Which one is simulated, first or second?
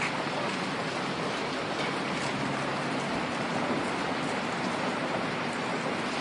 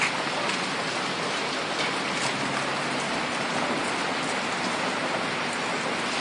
first